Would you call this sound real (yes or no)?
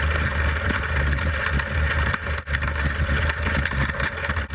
yes